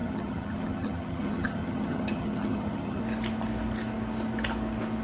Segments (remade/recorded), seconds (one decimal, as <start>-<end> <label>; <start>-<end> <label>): 0.0-3.0 remade; 3.0-5.0 recorded

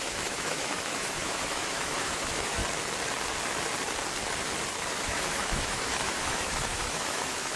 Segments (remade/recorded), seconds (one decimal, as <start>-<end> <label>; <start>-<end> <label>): 0.0-2.6 remade; 2.6-5.0 recorded; 5.0-7.6 remade

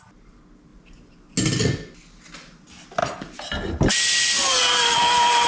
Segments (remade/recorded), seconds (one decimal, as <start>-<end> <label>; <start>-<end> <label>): 0.0-5.5 recorded

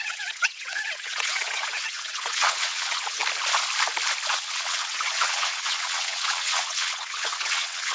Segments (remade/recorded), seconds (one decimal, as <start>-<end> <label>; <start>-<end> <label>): 0.0-3.2 remade; 3.2-4.3 recorded; 4.3-7.9 remade